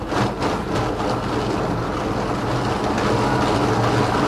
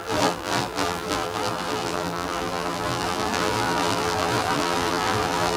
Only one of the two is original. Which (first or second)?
first